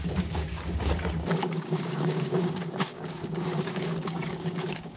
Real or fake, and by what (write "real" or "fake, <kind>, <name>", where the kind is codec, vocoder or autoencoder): fake, codec, DAC